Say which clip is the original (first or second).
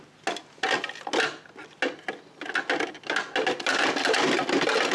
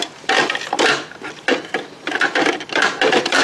first